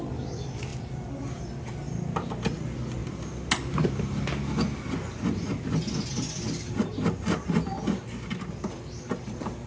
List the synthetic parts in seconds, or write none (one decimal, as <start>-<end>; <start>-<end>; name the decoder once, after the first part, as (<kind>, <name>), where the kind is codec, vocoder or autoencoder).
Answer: none